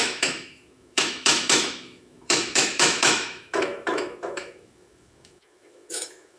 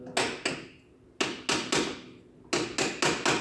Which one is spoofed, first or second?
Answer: first